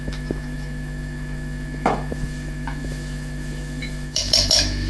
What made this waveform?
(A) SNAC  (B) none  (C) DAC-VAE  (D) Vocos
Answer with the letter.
C